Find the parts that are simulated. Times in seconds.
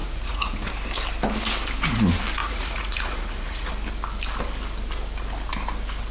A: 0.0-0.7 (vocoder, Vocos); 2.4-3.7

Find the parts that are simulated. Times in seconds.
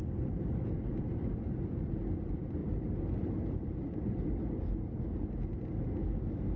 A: 2.6-4.4 (vocoder, BigVGAN v2)